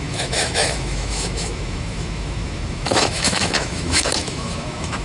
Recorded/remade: remade